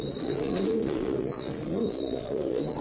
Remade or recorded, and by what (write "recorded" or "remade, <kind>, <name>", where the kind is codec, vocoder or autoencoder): remade, vocoder, Vocos